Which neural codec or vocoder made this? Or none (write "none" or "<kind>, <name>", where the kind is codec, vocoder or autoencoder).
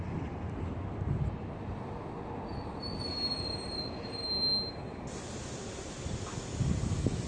none